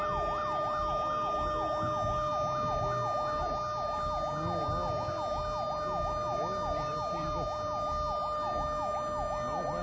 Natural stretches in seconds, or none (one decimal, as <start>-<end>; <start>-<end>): 0.0-9.8